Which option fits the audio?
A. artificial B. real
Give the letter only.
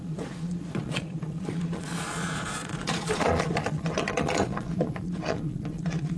A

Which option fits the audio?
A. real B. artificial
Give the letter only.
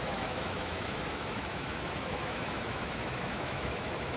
B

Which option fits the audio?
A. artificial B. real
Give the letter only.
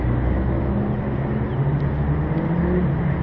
B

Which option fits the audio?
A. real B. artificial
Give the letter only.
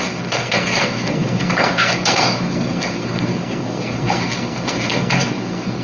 B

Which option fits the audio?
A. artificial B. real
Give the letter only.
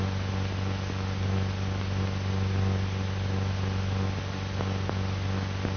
B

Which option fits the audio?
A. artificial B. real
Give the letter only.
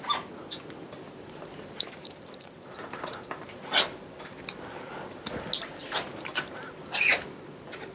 B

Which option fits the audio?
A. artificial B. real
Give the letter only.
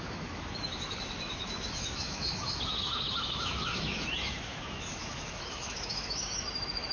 A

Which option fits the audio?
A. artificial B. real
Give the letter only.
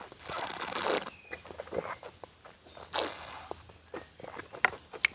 B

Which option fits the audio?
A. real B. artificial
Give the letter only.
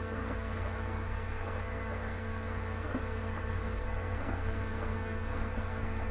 B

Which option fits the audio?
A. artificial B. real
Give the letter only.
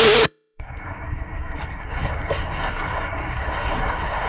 A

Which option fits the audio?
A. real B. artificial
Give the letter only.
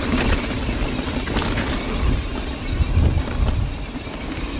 A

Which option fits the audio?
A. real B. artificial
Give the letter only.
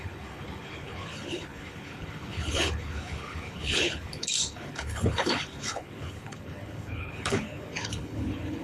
B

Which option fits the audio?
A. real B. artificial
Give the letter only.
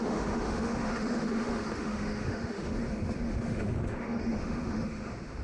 B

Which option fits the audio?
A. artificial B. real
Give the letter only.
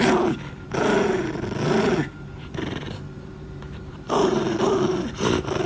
A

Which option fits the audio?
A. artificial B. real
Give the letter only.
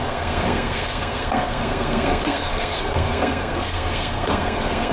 A